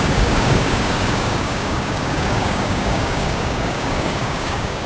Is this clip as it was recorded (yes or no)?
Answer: no